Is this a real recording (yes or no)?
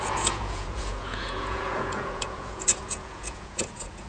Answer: no